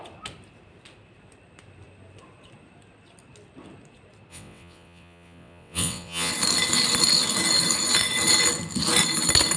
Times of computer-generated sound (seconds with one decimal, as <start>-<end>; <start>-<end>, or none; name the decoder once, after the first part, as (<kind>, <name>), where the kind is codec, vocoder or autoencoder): 4.3-6.3 (vocoder, WaveNeXt)